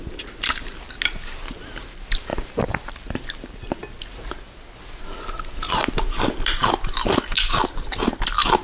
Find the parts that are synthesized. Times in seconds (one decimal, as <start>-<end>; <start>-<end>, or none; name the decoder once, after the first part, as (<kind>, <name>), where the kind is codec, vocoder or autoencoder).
2.3-2.9 (vocoder, BigVGAN v2)